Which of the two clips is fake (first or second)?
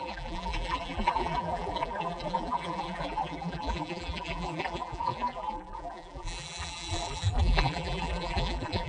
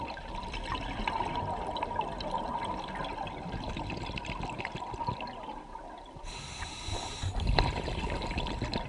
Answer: first